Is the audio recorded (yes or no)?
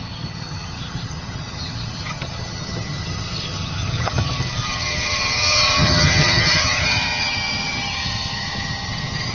no